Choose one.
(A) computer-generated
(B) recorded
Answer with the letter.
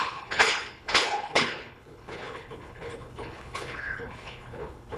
A